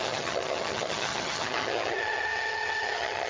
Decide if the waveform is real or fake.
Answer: fake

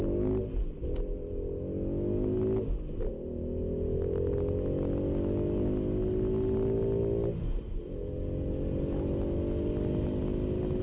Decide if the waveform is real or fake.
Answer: real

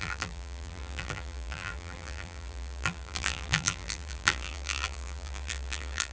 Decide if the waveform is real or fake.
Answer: fake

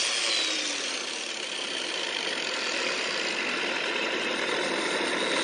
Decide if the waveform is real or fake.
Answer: real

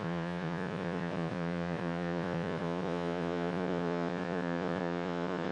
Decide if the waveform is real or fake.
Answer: fake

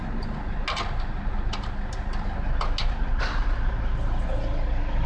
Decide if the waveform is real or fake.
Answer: real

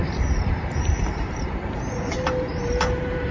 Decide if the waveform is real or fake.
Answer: fake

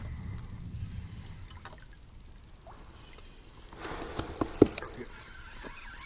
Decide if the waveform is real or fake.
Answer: real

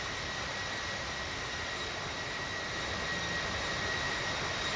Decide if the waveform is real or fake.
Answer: real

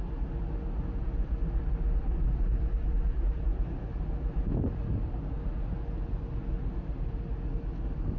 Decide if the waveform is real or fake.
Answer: real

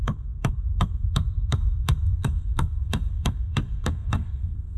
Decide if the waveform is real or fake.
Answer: fake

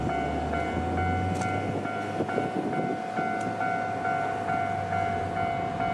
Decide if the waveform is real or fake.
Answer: real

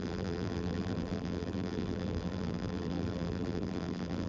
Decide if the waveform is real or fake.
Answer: fake